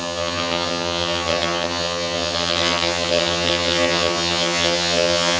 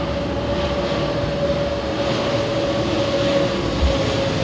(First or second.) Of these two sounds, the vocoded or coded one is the first